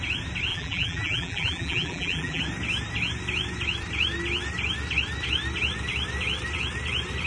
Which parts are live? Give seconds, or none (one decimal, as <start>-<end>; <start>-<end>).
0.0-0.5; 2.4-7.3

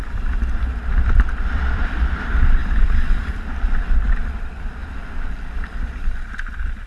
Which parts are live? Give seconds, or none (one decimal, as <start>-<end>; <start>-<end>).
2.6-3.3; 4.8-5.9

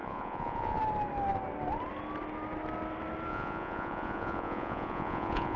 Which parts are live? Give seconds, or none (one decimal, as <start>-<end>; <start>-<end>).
0.8-3.3

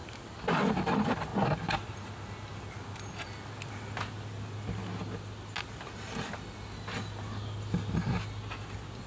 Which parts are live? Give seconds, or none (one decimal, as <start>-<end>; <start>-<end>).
0.0-9.1